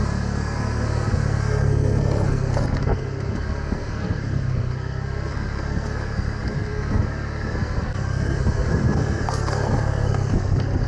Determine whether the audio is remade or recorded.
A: remade